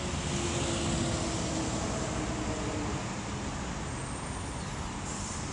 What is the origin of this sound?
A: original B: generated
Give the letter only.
A